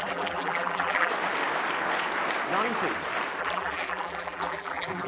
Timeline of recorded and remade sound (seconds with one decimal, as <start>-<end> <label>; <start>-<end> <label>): 0.0-1.1 remade; 1.1-3.4 recorded; 3.4-5.1 remade